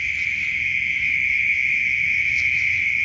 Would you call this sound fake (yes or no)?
no